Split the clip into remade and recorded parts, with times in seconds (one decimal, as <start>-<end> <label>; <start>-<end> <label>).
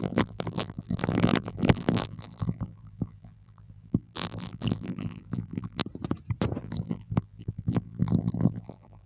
0.0-5.8 remade; 5.8-6.6 recorded; 6.6-9.1 remade